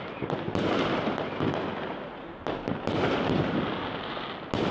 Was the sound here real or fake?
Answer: real